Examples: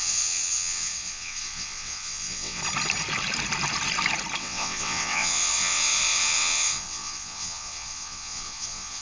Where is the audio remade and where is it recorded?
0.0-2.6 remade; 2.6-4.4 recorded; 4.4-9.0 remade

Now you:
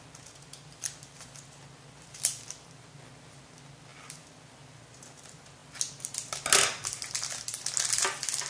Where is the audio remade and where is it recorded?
0.0-8.5 recorded

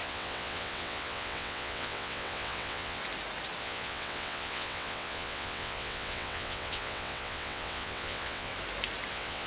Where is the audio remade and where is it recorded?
0.0-3.0 remade; 3.0-3.6 recorded; 3.6-8.5 remade; 8.5-9.1 recorded; 9.1-9.5 remade

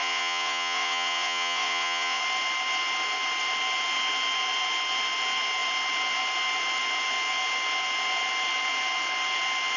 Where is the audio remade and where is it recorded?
0.0-2.2 remade; 2.2-9.8 recorded